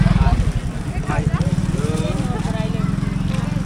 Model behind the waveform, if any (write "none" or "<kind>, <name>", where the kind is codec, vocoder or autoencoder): none